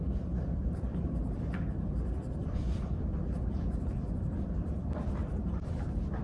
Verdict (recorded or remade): remade